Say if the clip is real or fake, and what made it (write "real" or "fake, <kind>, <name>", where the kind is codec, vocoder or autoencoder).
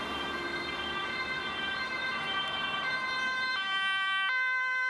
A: real